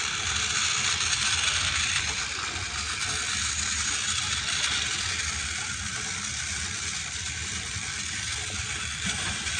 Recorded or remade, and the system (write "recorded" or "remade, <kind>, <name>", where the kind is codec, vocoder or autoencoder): recorded